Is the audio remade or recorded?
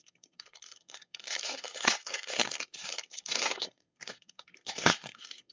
remade